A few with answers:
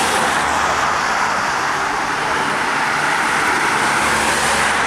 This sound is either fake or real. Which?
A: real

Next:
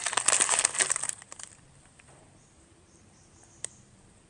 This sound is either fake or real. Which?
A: fake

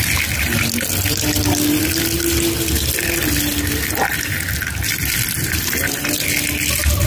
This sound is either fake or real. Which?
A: real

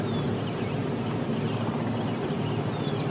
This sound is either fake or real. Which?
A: real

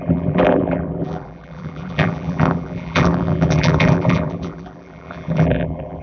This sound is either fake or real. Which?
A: fake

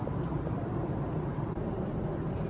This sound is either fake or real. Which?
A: fake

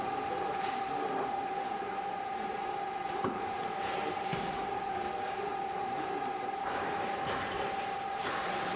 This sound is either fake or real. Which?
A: fake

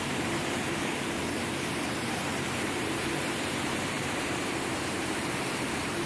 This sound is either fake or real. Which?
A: fake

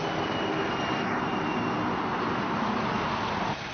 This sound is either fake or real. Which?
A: real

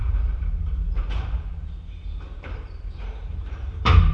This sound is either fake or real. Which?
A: fake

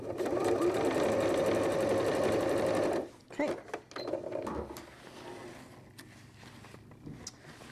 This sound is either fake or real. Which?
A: real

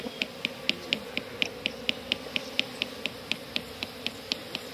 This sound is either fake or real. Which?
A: real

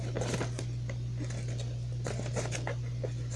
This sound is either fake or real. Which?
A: real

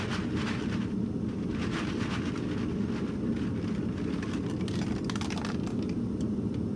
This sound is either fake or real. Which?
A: real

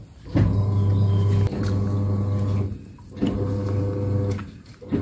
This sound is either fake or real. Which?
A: real